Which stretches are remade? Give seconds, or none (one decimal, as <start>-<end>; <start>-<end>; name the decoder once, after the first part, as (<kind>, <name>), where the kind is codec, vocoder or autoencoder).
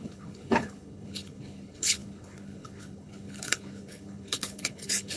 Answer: 0.0-5.2 (codec, HILCodec)